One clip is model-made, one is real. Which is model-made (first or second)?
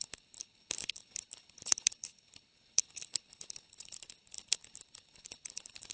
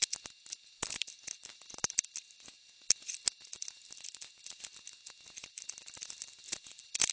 first